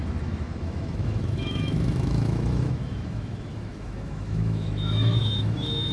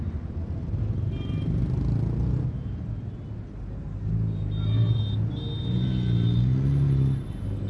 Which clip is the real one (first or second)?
second